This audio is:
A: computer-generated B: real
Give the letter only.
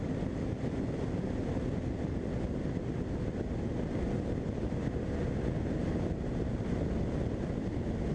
B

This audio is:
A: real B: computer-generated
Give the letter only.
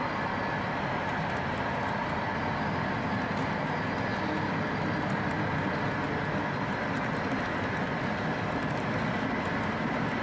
A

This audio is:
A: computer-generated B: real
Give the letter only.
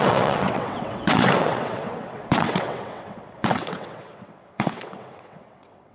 A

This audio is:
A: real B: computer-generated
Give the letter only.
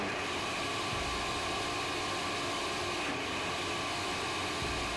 A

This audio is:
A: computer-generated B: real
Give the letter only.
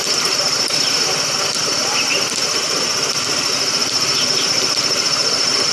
B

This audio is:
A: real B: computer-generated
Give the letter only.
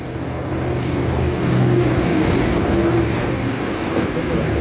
B